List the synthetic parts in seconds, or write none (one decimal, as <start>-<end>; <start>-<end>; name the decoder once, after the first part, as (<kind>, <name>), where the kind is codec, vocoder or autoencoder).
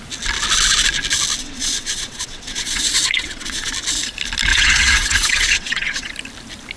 1.4-3.7 (vocoder, WaveNeXt); 4.5-6.1